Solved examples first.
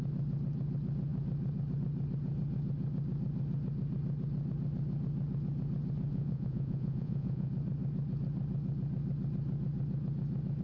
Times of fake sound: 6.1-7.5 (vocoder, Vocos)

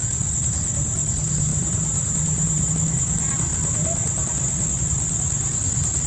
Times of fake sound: 1.5-2.7 (vocoder, BigVGAN v2)